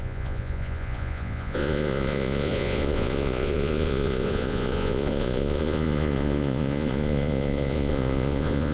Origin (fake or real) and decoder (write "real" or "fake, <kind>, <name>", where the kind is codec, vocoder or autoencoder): fake, vocoder, Vocos